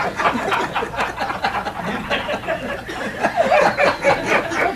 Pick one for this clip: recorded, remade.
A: recorded